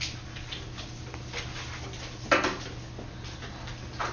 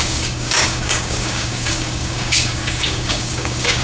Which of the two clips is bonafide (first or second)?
first